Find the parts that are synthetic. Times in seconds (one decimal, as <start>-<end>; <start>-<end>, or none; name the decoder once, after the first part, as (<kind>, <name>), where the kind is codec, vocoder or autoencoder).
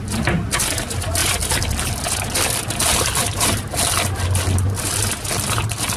none